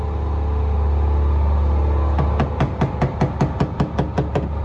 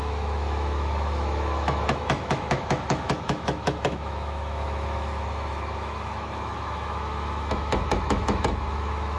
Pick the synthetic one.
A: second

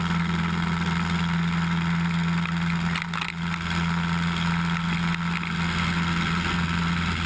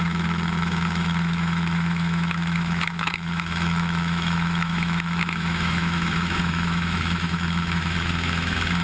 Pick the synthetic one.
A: second